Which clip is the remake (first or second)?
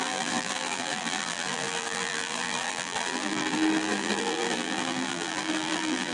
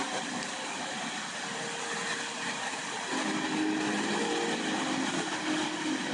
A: first